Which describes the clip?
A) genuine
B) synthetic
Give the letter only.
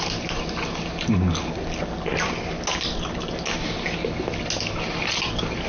A